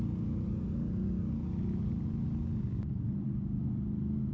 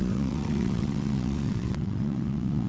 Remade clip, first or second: second